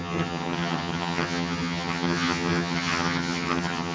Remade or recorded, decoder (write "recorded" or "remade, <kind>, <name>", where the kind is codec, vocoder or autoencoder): remade, vocoder, HiFi-GAN